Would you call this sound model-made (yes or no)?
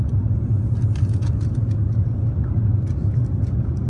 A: no